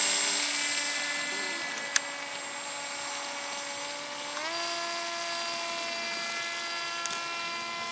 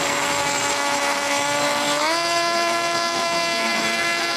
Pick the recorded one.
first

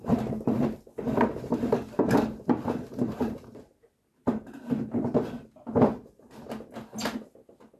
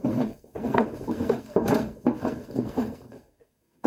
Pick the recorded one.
first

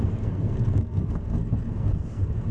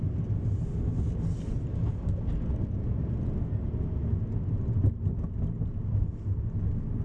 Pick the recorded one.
second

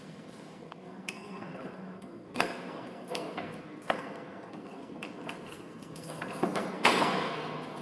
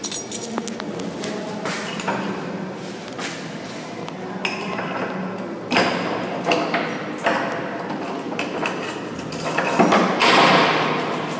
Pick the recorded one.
second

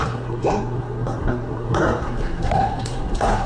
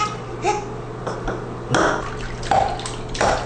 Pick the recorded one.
second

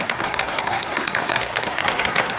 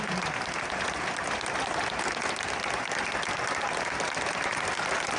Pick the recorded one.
second